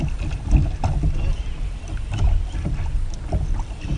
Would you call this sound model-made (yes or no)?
no